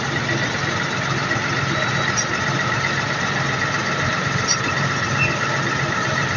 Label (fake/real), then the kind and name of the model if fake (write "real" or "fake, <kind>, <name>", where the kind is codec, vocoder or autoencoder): real